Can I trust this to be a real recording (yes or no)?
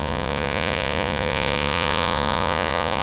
no